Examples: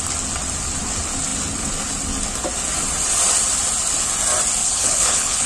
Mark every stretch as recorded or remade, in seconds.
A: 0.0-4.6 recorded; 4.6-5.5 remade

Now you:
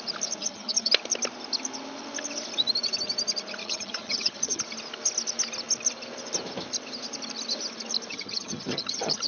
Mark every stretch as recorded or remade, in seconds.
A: 0.0-0.4 recorded; 0.4-0.9 remade; 0.9-3.6 recorded; 3.6-4.6 remade; 4.6-8.1 recorded; 8.1-9.3 remade

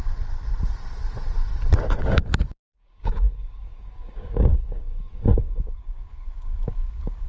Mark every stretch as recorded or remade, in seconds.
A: 0.0-2.0 recorded; 2.0-7.3 remade